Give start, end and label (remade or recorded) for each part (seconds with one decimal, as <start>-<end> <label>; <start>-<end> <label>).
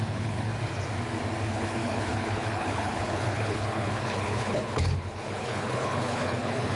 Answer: 0.0-0.5 remade; 0.5-1.5 recorded; 1.5-6.8 remade